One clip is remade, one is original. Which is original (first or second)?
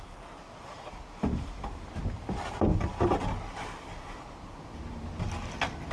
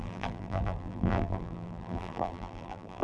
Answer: first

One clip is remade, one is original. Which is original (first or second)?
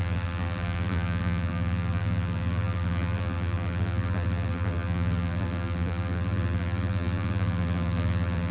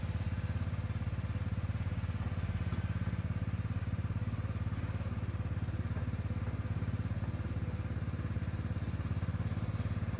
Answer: second